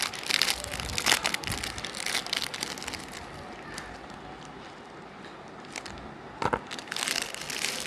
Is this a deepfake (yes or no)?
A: no